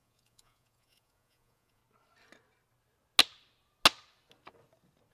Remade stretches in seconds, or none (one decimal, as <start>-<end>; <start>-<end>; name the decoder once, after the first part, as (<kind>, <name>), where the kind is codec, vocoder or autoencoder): 0.0-1.8 (vocoder, Vocos)